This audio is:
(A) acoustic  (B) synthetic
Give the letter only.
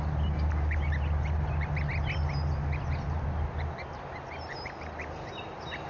A